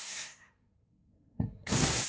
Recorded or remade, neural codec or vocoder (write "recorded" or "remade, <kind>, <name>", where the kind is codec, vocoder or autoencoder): remade, codec, SNAC